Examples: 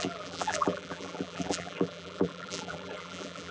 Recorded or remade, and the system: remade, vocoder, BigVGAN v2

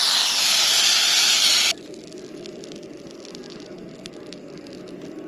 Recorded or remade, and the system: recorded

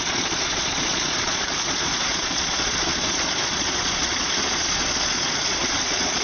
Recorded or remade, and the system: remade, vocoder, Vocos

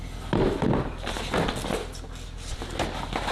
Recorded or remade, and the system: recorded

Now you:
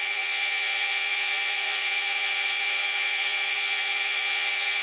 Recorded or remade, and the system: remade, vocoder, Vocos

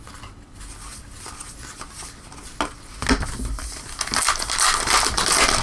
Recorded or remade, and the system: recorded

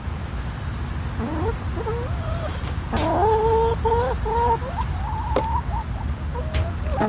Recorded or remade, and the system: recorded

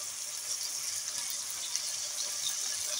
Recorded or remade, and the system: recorded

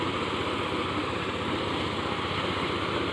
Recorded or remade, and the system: recorded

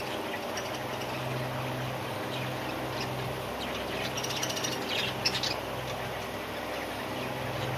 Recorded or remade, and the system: recorded